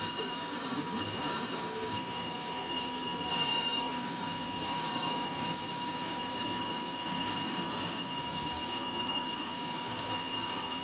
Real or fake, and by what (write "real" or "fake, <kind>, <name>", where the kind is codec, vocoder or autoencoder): fake, codec, DAC